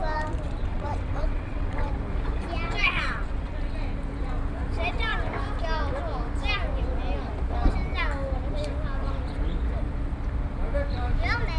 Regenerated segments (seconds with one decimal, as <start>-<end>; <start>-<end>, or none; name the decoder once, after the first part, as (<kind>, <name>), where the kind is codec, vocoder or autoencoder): 0.6-1.9 (vocoder, WaveNeXt); 2.8-3.7